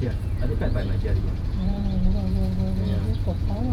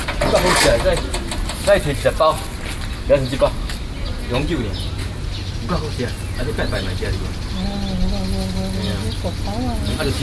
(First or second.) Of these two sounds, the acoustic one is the second